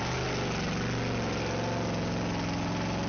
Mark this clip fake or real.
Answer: real